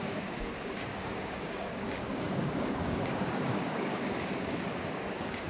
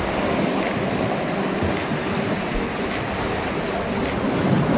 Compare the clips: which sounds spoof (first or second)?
first